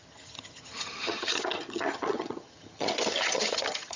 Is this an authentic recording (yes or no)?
no